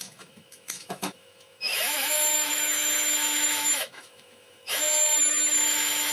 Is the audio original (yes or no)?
no